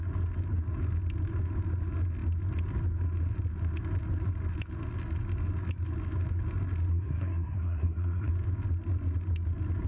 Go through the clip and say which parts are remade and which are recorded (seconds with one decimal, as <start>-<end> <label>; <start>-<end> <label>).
0.0-6.9 recorded; 6.9-8.3 remade; 8.3-9.9 recorded